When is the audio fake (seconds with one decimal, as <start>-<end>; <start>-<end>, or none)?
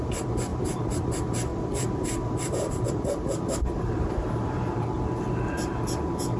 0.5-1.0; 1.5-5.2